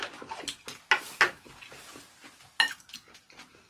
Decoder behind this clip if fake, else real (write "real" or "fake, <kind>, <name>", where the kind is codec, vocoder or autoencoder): real